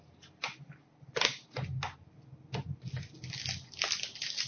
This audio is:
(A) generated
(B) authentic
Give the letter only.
B